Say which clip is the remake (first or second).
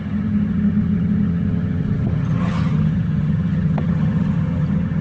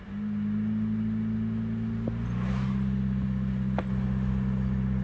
first